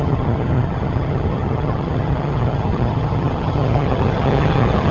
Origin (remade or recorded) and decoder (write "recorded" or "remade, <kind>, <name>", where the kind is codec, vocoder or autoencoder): remade, vocoder, HiFi-GAN